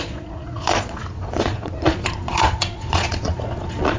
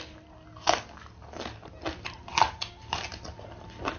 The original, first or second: second